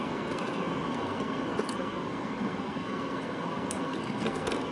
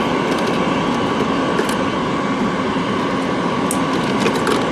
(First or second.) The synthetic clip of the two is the first